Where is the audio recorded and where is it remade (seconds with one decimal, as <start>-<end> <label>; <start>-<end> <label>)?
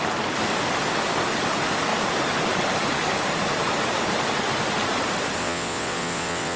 0.0-5.4 recorded; 5.4-6.6 remade